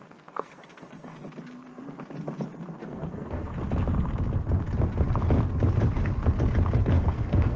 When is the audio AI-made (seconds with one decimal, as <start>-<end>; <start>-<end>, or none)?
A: 0.0-1.1; 2.8-3.5; 6.8-7.6